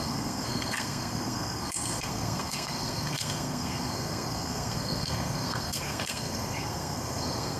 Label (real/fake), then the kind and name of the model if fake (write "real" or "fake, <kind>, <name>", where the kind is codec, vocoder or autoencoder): fake, codec, SNAC